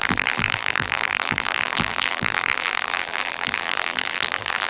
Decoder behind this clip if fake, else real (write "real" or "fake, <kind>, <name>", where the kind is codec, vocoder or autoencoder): fake, vocoder, BigVGAN v2